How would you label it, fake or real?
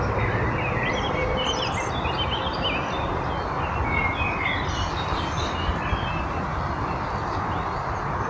real